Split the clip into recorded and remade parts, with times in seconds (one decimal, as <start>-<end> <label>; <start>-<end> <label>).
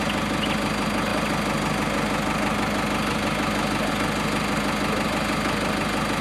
0.0-6.2 recorded